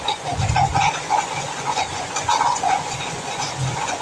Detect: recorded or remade remade